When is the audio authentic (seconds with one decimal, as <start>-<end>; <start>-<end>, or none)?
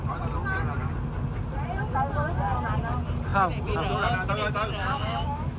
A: 0.0-4.8